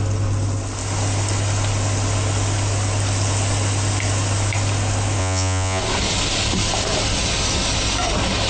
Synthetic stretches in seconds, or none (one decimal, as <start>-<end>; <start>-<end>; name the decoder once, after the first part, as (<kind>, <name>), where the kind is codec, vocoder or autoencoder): 5.2-5.8 (vocoder, Vocos)